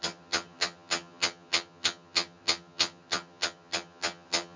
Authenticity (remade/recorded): remade